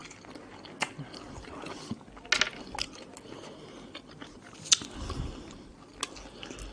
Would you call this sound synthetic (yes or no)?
no